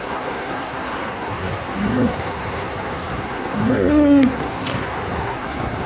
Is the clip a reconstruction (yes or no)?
yes